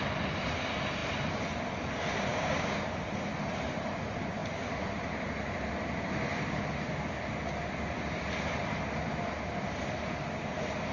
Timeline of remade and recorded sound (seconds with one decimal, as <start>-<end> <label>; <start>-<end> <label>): 0.0-2.3 recorded; 2.3-2.9 remade; 2.9-10.9 recorded

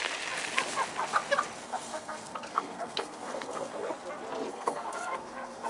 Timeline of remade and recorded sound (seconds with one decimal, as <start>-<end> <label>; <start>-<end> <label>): 0.0-1.6 recorded; 1.6-3.9 remade; 3.9-4.5 recorded; 4.5-5.7 remade